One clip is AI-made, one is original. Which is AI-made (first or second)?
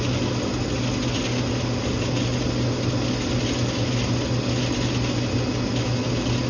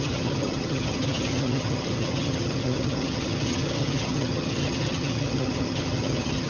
second